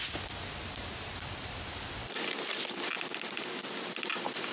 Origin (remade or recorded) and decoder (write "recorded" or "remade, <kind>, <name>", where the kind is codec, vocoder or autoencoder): remade, vocoder, BigVGAN v2